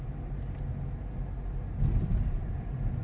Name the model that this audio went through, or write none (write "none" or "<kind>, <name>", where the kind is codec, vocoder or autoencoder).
none